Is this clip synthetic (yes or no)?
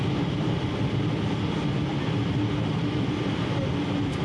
yes